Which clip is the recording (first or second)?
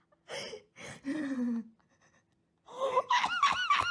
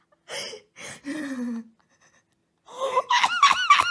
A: second